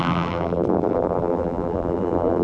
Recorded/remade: remade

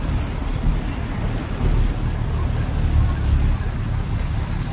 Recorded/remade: recorded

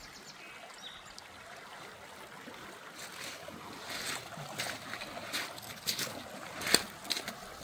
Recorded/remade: recorded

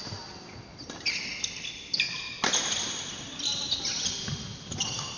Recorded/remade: recorded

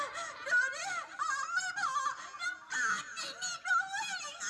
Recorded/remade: recorded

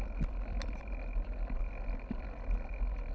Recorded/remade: recorded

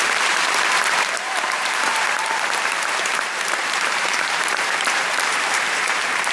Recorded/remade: remade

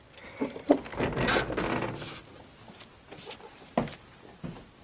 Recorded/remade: recorded